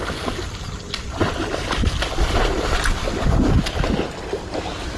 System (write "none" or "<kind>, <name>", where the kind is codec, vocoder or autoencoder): none